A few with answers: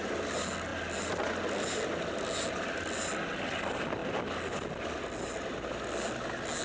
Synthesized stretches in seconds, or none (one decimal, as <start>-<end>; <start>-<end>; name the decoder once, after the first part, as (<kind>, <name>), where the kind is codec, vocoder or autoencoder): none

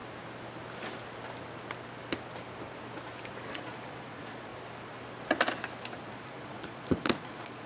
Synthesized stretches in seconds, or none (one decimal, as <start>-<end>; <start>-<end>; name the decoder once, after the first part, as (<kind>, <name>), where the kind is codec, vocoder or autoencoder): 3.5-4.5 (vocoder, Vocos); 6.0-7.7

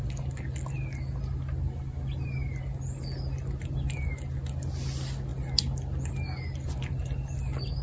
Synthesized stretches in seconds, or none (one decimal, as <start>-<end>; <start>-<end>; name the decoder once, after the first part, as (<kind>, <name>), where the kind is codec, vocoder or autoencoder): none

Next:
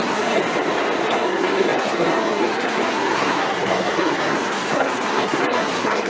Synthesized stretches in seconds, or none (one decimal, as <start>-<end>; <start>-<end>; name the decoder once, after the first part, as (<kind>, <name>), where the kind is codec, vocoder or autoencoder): 0.0-0.4 (codec, SNAC); 1.1-6.1